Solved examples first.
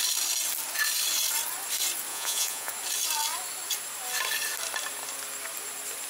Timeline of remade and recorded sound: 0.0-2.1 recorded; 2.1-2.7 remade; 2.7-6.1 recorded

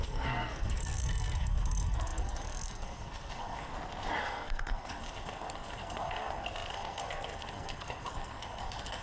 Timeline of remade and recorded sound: 0.0-3.7 remade; 3.7-4.2 recorded; 4.2-9.0 remade

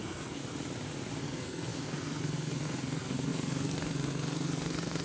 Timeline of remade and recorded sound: 0.0-0.4 remade; 0.4-1.2 recorded; 1.2-5.0 remade